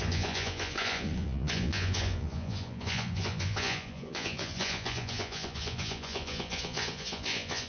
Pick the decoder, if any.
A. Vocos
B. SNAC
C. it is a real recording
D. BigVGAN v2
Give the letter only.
A